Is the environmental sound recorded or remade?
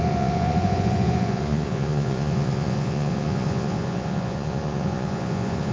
remade